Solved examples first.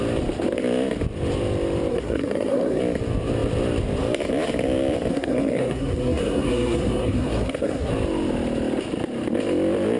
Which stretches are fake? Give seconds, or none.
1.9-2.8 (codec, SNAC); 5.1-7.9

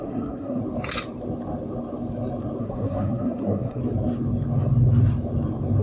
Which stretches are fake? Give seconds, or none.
0.0-0.6 (codec, SNAC); 2.6-3.8